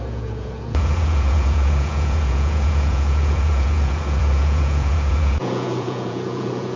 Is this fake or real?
fake